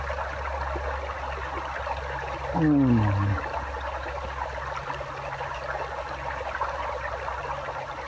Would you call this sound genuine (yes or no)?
yes